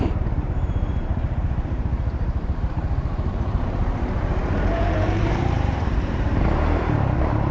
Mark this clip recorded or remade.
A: remade